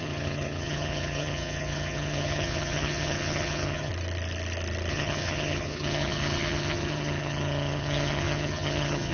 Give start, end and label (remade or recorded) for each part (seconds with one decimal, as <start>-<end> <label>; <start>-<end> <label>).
0.0-3.9 remade; 3.9-4.9 recorded; 4.9-9.1 remade